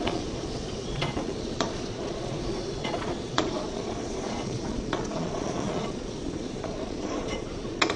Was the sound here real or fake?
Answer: fake